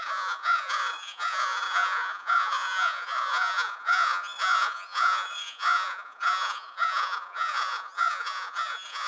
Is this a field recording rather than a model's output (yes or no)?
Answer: no